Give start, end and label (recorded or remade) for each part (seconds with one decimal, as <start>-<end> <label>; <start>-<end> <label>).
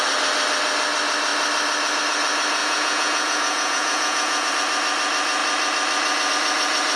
0.0-2.6 recorded; 2.6-4.5 remade; 4.5-7.0 recorded